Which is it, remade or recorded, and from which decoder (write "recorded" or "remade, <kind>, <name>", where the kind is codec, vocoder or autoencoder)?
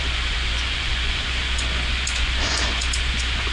remade, vocoder, Vocos